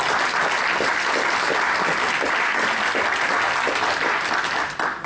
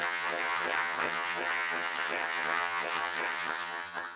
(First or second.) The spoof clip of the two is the second